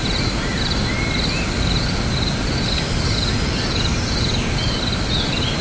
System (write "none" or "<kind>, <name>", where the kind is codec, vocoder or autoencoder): none